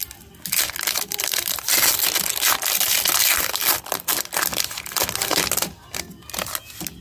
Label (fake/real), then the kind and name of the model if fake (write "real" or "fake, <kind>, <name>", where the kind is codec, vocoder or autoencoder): real